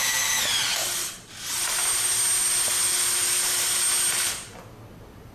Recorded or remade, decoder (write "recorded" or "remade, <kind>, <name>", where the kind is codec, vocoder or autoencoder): recorded